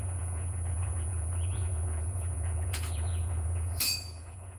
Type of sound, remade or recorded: remade